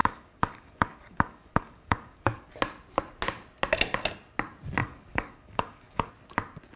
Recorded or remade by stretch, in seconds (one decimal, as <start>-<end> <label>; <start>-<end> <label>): 0.0-2.5 remade; 2.5-4.8 recorded; 4.8-6.1 remade; 6.1-6.8 recorded